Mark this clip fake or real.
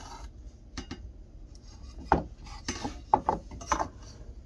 real